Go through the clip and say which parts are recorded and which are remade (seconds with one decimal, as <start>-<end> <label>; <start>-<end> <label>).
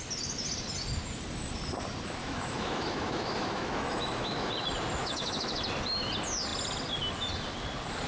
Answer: 0.0-2.2 recorded; 2.2-4.5 remade; 4.5-5.0 recorded; 5.0-5.6 remade; 5.6-8.1 recorded